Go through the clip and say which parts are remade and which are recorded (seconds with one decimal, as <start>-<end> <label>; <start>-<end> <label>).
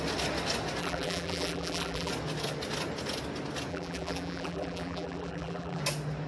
0.0-0.8 recorded; 0.8-2.1 remade; 2.1-3.7 recorded; 3.7-5.8 remade; 5.8-6.3 recorded